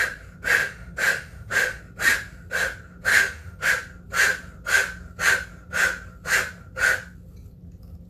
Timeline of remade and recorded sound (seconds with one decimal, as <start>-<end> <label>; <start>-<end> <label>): 0.0-0.6 recorded; 0.6-1.8 remade; 1.8-3.1 recorded; 3.1-3.7 remade; 3.7-8.1 recorded